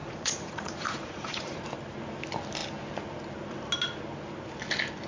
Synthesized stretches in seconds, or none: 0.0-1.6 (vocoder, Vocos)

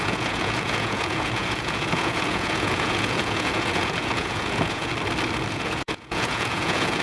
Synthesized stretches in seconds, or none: 0.0-4.9 (vocoder, Vocos); 5.5-7.0

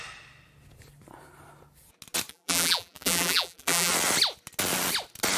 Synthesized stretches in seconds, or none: 2.3-3.9 (vocoder, BigVGAN v2)

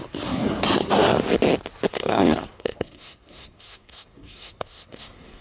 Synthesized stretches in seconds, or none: 0.0-1.2 (codec, SNAC); 1.9-5.4

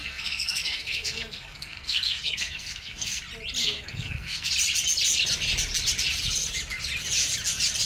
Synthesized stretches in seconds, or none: 0.0-3.2 (codec, SNAC); 3.6-4.5

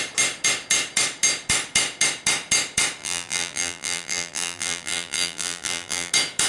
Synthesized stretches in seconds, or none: 3.0-6.1 (vocoder, BigVGAN v2)

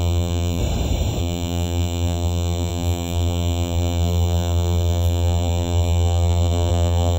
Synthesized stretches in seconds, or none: 0.0-0.6 (vocoder, BigVGAN v2); 1.2-7.2